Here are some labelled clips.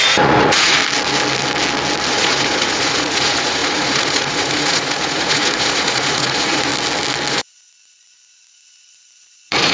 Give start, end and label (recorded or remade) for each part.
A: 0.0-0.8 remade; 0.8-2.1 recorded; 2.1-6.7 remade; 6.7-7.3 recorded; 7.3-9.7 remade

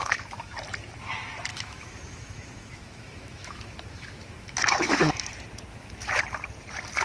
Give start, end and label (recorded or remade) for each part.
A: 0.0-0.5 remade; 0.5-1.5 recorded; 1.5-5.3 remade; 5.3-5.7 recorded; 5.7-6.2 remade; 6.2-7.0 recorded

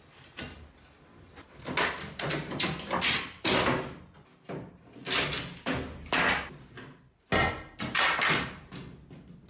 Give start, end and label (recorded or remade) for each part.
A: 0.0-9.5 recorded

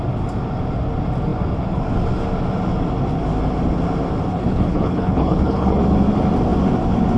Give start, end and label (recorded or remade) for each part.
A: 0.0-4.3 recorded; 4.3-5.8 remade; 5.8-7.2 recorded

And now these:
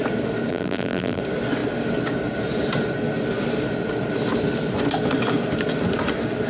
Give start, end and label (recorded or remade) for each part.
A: 0.0-0.5 recorded; 0.5-1.2 remade; 1.2-6.5 recorded

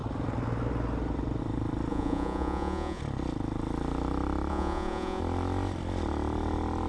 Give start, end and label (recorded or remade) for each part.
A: 0.0-1.9 recorded; 1.9-3.0 remade; 3.0-4.5 recorded; 4.5-5.2 remade; 5.2-6.9 recorded

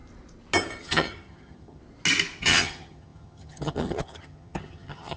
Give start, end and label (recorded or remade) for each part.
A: 0.0-0.8 recorded; 0.8-1.8 remade; 1.8-2.4 recorded; 2.4-5.2 remade

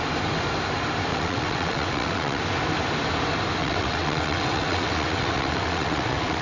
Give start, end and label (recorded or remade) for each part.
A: 0.0-1.1 recorded; 1.1-2.4 remade; 2.4-3.6 recorded; 3.6-6.4 remade